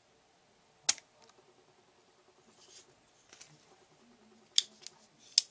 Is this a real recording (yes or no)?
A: yes